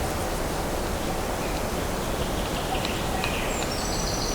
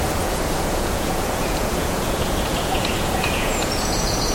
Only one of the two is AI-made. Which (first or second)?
second